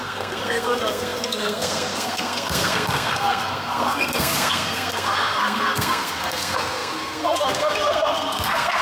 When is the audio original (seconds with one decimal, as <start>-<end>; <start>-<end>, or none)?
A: none